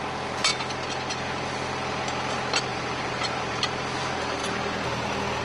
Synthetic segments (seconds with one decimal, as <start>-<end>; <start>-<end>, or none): 2.7-3.6